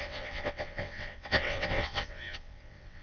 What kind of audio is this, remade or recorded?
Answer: remade